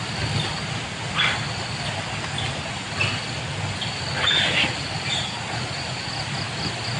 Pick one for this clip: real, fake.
real